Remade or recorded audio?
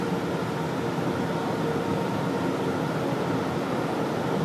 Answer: recorded